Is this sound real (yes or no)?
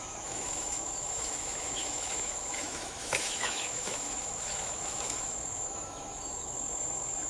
no